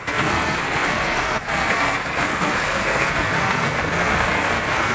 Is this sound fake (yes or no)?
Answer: yes